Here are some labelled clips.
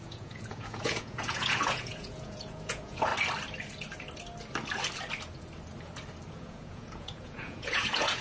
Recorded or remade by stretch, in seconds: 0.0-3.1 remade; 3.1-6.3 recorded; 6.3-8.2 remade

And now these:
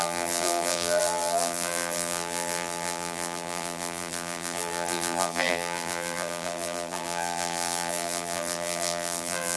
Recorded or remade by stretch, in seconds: 0.0-9.6 remade

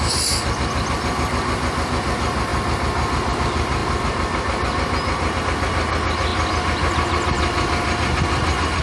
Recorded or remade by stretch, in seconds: 0.0-8.8 recorded

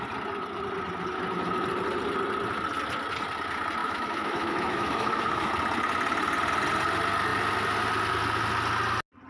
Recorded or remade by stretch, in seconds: 0.0-3.8 recorded; 3.8-5.5 remade; 5.5-9.3 recorded

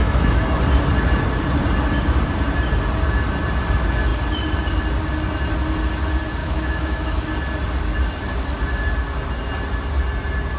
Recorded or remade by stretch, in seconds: 0.0-0.6 remade; 0.6-6.4 recorded; 6.4-7.3 remade; 7.3-10.6 recorded

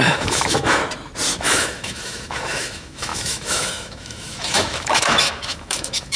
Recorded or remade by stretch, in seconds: 0.0-0.8 remade; 0.8-1.4 recorded; 1.4-6.2 remade

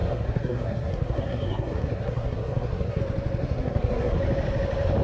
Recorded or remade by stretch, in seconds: 0.0-3.0 remade; 3.0-3.4 recorded; 3.4-4.2 remade; 4.2-5.0 recorded

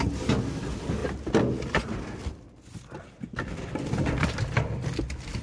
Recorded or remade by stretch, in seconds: 0.0-5.4 recorded